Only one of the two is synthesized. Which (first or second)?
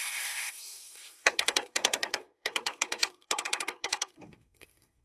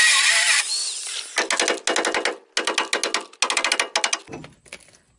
first